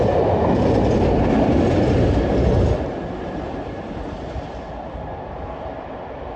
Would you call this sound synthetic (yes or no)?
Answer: no